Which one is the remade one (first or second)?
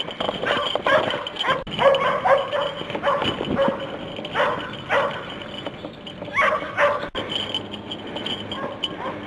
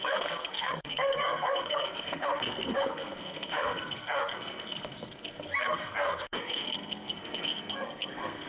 second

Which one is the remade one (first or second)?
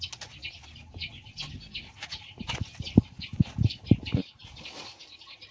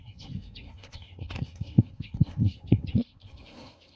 second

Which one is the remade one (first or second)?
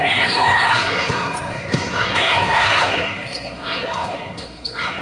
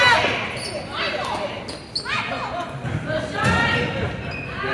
first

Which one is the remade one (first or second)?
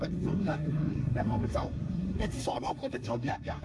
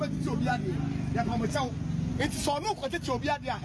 first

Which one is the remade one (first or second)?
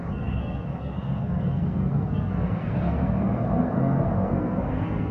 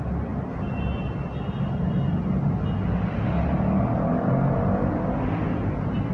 first